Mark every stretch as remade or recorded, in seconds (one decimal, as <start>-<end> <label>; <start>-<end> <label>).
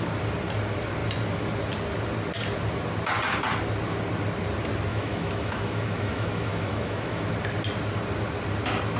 0.0-4.9 recorded; 4.9-7.3 remade; 7.3-9.0 recorded